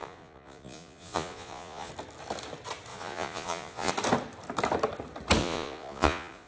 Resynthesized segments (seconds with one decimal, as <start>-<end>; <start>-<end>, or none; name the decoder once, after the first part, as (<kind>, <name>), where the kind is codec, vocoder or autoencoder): 0.0-1.9 (vocoder, Vocos); 2.9-3.9; 5.4-6.5